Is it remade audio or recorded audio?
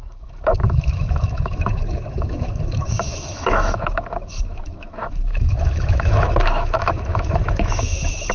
remade